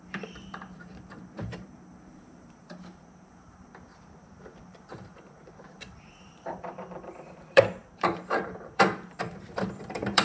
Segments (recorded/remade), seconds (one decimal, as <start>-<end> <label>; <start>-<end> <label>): 0.0-10.2 remade